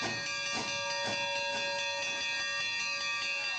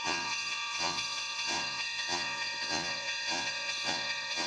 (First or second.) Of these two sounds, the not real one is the second